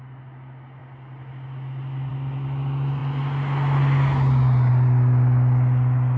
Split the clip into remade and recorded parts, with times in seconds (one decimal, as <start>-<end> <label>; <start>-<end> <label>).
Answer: 0.0-6.2 recorded